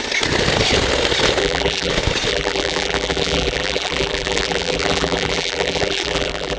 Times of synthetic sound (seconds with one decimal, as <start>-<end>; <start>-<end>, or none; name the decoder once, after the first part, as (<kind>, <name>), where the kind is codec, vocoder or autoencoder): 1.4-1.9 (vocoder, BigVGAN v2); 2.3-6.6